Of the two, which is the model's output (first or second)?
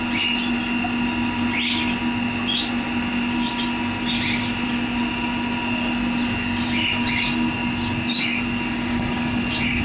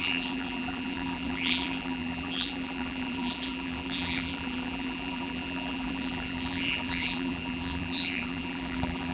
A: second